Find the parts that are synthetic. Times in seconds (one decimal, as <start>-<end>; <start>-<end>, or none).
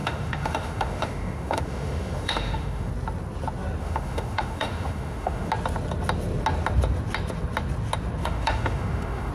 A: 0.0-2.9; 3.8-5.5; 8.2-9.3